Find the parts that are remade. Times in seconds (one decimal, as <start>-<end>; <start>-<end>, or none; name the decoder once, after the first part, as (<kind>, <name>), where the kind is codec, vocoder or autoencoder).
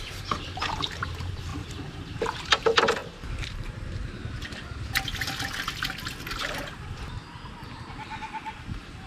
0.0-4.2 (vocoder, BigVGAN v2); 8.2-9.1